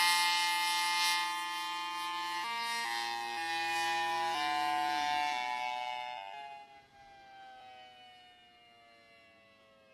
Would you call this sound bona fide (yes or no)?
yes